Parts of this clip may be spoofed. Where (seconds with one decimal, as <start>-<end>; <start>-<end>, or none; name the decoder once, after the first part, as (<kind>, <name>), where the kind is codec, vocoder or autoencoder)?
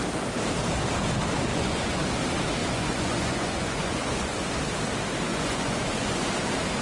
1.5-2.0 (vocoder, Vocos); 2.6-4.5; 5.3-6.3